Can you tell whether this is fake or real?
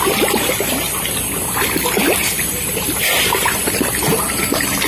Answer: fake